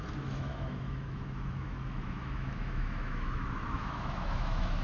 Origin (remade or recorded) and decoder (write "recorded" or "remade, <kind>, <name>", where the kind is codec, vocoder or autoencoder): remade, autoencoder, DAC-VAE